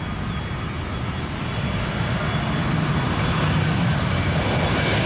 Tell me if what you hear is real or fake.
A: real